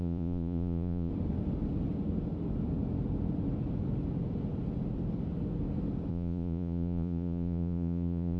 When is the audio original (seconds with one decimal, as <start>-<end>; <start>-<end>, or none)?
1.1-6.1